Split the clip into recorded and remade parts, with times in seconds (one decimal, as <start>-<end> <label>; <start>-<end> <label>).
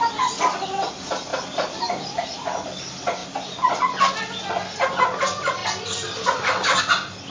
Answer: 0.0-1.3 recorded; 1.3-2.5 remade; 2.5-7.3 recorded